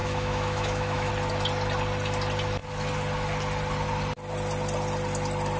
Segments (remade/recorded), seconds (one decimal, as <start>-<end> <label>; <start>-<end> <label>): 0.0-1.1 remade; 1.1-5.6 recorded